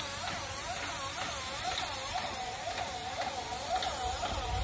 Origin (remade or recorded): recorded